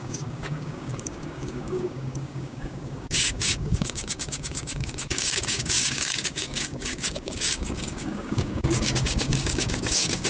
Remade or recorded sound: remade